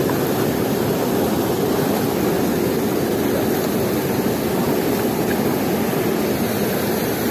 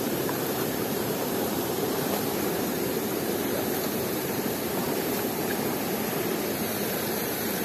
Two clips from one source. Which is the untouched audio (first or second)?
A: first